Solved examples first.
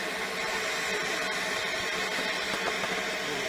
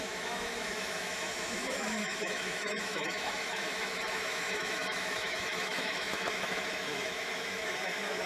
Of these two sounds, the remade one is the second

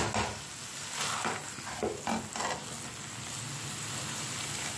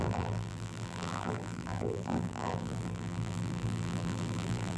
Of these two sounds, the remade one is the second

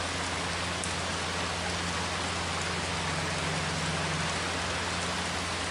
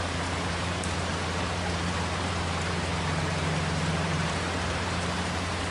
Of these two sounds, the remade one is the second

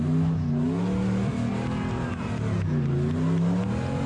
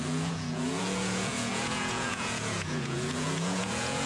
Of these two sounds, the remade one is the second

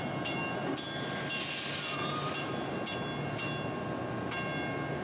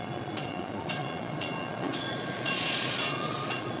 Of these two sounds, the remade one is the second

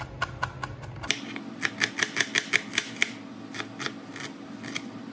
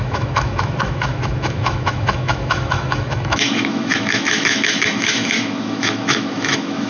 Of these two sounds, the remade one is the second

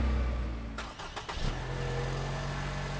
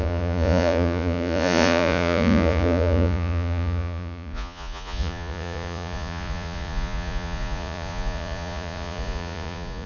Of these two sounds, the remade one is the second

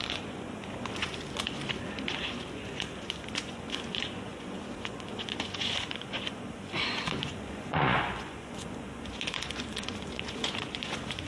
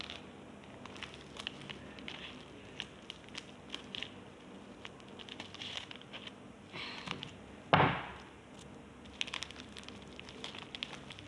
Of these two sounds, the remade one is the first